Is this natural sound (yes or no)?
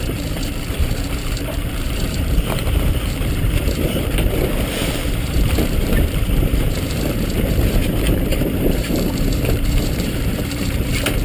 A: no